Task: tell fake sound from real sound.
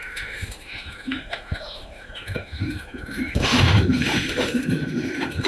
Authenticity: fake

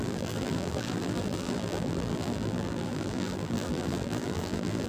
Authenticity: fake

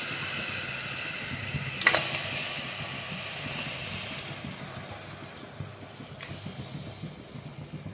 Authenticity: real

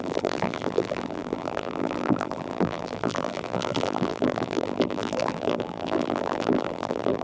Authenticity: fake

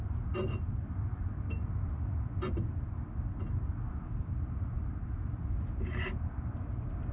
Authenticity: real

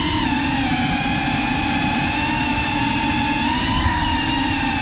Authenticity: fake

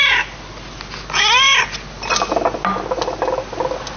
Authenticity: real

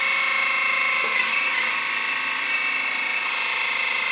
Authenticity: real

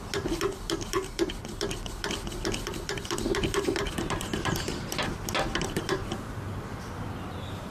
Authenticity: real